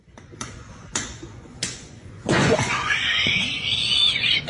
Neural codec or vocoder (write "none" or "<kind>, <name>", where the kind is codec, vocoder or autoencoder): vocoder, Vocos